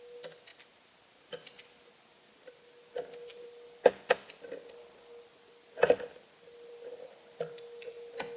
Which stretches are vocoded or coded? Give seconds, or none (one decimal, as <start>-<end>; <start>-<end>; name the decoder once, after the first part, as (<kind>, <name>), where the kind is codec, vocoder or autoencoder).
none